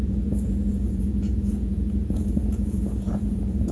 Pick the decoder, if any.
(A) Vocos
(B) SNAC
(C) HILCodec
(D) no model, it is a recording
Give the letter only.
A